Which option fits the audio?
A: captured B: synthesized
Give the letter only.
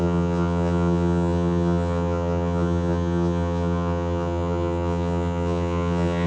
B